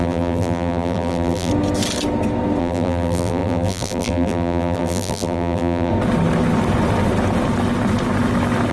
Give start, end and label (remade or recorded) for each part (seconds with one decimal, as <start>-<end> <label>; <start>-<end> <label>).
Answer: 0.0-1.5 remade; 1.5-2.6 recorded; 2.6-5.9 remade; 5.9-8.7 recorded